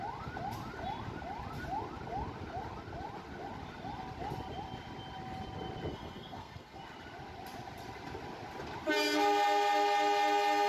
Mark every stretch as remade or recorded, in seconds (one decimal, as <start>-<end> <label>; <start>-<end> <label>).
0.0-5.9 recorded; 5.9-6.8 remade; 6.8-10.7 recorded